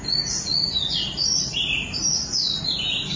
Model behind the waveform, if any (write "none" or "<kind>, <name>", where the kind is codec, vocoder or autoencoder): none